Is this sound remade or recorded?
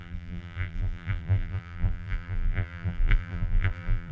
remade